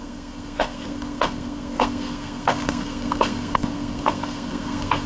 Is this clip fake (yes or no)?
yes